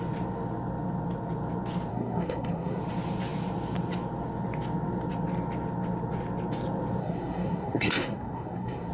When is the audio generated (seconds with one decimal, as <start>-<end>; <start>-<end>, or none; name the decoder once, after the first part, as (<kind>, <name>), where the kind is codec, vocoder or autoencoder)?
1.9-2.8 (codec, SNAC); 7.0-8.9